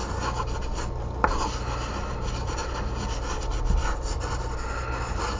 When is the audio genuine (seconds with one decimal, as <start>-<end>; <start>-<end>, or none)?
0.0-5.4